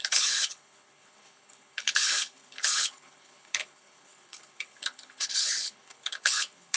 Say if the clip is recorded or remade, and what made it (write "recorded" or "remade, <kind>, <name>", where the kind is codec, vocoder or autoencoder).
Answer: remade, codec, HILCodec